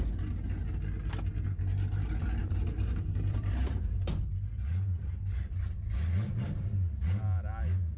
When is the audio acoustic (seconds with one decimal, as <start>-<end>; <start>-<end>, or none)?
0.0-2.4; 4.2-8.0